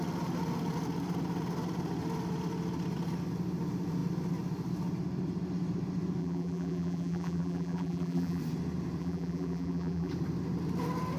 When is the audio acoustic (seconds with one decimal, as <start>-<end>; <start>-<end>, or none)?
0.0-6.2; 8.4-9.0; 10.1-11.2